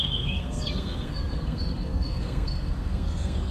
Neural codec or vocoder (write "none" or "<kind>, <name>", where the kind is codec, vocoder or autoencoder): codec, SNAC